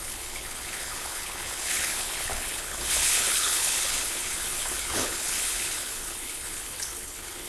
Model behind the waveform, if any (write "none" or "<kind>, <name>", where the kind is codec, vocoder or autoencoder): codec, HILCodec